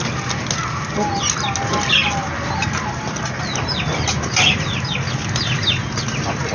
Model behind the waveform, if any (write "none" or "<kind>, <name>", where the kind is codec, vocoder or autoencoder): none